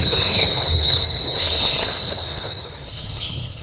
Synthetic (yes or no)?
yes